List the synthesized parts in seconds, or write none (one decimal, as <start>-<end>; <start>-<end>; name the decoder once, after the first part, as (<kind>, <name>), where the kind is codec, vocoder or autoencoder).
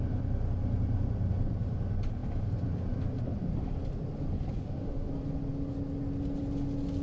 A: 4.6-5.1 (autoencoder, DAC-VAE)